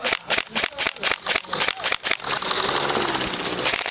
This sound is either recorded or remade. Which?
recorded